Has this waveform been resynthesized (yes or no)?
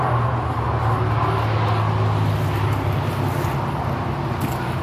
no